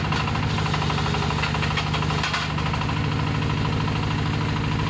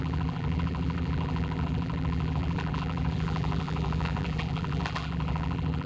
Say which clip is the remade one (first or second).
second